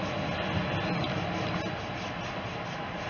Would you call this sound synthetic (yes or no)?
no